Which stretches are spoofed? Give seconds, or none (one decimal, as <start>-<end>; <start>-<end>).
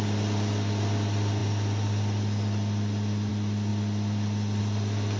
none